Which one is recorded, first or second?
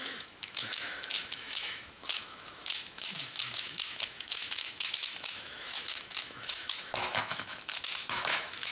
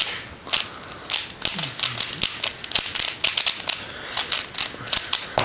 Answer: second